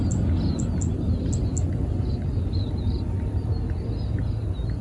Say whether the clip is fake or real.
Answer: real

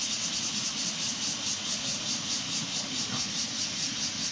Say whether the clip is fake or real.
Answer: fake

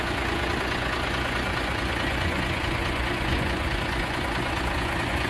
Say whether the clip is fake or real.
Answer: fake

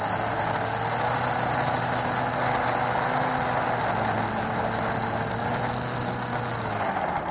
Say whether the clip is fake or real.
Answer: real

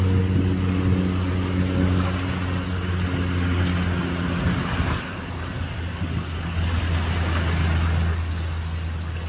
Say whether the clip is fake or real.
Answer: real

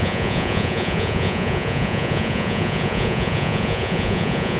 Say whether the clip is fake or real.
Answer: fake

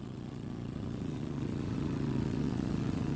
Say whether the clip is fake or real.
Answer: fake